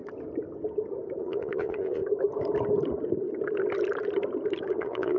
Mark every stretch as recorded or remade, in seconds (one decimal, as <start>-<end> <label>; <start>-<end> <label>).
0.0-1.2 recorded; 1.2-2.0 remade; 2.0-4.7 recorded; 4.7-5.2 remade